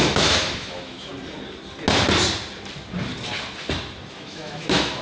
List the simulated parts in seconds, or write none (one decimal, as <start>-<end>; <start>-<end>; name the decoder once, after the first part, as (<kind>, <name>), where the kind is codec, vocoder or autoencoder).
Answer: 0.0-1.1 (autoencoder, DAC-VAE); 4.1-5.0